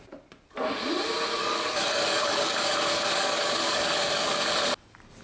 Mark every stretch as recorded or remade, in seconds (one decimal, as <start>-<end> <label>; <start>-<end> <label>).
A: 0.0-1.4 recorded; 1.4-4.5 remade; 4.5-5.2 recorded